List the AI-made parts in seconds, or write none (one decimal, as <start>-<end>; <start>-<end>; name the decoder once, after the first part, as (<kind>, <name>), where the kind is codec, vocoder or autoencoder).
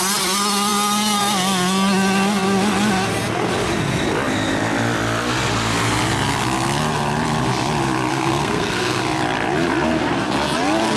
8.1-9.0 (codec, SNAC)